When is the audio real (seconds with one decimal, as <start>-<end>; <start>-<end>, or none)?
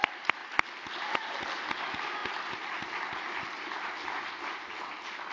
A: 0.0-0.4; 1.8-5.3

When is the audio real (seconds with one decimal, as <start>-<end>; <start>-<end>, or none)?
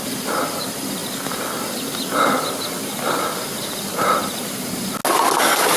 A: 0.0-5.8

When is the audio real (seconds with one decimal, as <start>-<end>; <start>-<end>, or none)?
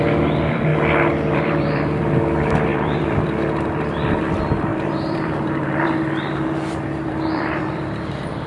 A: 0.7-1.3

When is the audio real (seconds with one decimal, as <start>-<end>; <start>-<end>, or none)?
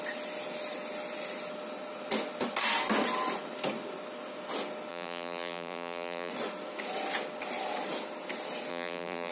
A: 0.0-4.9; 6.3-8.7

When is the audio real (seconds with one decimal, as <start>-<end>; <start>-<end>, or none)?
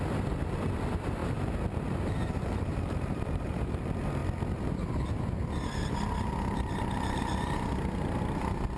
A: 0.0-1.2; 3.8-8.8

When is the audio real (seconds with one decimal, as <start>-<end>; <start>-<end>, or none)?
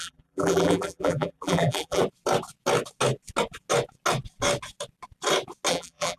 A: 2.0-5.7